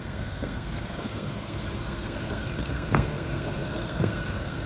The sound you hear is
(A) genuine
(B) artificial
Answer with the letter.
B